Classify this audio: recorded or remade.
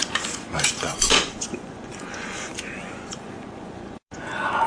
remade